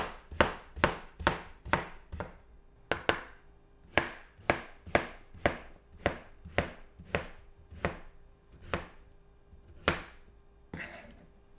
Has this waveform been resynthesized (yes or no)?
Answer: no